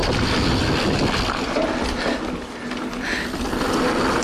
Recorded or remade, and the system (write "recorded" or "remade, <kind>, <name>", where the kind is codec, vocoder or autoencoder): recorded